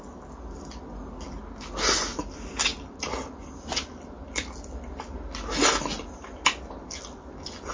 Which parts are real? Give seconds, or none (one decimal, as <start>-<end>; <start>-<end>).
0.0-7.7